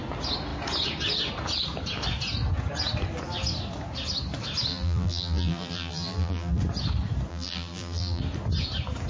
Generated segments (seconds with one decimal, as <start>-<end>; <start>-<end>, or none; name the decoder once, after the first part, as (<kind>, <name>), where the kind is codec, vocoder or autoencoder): 4.7-6.6 (vocoder, BigVGAN v2); 7.3-8.2